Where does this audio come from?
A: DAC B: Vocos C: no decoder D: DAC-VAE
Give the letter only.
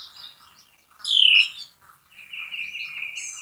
C